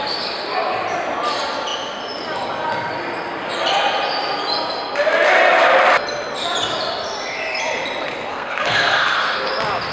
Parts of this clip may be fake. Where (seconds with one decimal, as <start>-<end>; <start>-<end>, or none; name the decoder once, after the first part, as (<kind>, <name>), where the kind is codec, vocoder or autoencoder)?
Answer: 8.3-9.5 (codec, SNAC)